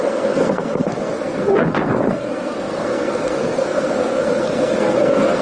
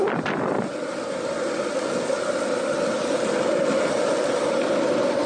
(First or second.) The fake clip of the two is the first